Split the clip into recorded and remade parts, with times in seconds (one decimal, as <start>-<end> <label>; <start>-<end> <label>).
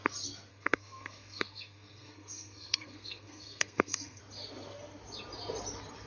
0.0-0.5 recorded; 0.5-4.2 remade; 4.2-6.1 recorded